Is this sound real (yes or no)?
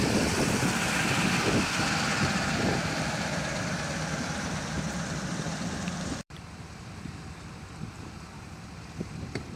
no